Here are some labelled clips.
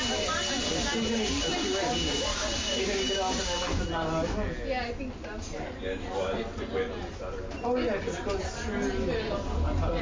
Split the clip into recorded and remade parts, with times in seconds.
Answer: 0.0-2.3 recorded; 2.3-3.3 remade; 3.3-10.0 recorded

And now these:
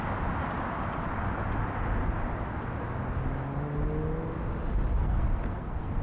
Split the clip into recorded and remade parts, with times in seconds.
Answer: 0.0-5.0 recorded; 5.0-6.0 remade